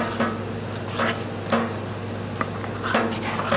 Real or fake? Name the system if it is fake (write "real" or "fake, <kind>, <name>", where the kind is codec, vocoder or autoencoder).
real